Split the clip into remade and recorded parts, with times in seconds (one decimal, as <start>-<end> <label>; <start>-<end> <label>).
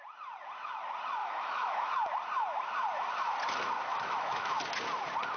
0.0-1.2 recorded; 1.2-1.9 remade; 1.9-3.9 recorded; 3.9-4.6 remade; 4.6-5.4 recorded